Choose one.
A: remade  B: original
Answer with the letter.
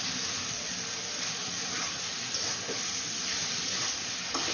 B